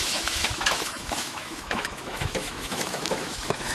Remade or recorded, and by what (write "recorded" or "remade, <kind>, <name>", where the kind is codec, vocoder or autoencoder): remade, autoencoder, DAC-VAE